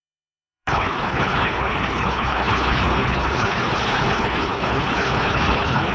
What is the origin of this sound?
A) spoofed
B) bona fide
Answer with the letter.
A